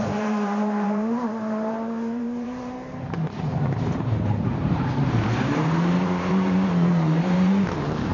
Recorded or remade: remade